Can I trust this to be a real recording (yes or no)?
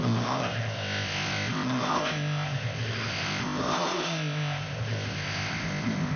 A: no